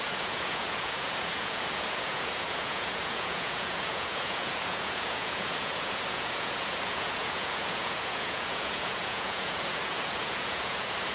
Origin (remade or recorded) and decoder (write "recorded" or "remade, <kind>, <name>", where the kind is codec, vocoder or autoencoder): remade, vocoder, Vocos